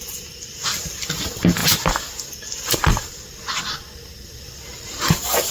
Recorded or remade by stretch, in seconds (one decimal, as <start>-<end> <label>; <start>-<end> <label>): 0.0-5.5 recorded